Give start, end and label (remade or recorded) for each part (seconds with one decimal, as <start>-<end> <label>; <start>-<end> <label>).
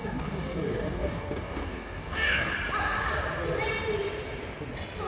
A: 0.0-2.5 remade; 2.5-5.1 recorded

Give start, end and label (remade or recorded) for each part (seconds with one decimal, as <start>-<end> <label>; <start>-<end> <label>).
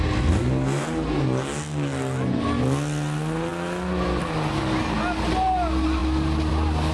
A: 0.0-6.9 recorded